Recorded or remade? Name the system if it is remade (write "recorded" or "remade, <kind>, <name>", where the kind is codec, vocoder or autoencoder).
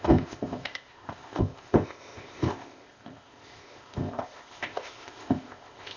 remade, codec, ZipCodec